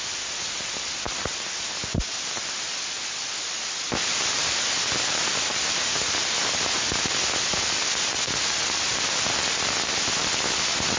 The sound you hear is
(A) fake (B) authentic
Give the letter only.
B